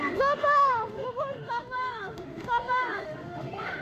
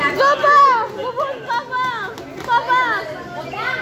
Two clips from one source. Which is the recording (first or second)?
second